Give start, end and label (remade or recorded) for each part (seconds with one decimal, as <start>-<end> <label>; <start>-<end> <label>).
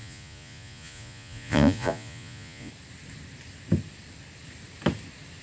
0.0-2.7 remade; 2.7-5.4 recorded